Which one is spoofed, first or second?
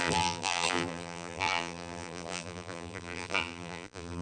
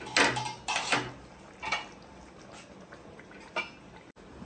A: first